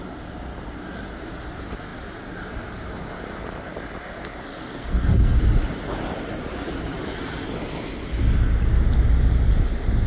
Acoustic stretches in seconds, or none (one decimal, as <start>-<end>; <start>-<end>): 0.0-4.7; 5.4-10.1